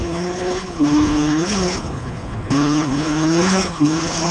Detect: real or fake fake